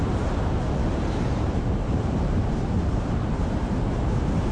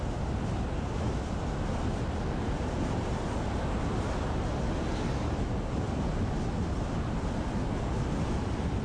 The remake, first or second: first